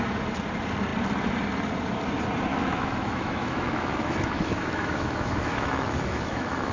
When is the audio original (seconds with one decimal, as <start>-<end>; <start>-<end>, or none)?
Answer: 0.0-2.5